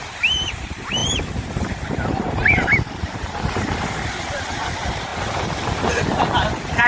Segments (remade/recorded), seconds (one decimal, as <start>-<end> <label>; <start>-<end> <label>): 0.0-6.9 remade